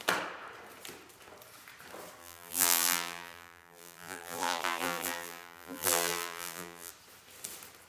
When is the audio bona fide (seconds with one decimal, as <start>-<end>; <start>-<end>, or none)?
0.0-2.2; 6.9-7.9